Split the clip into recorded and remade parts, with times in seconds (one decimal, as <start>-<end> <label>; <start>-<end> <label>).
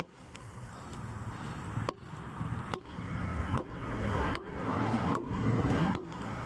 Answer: 0.0-0.7 remade; 0.7-2.8 recorded; 2.8-6.5 remade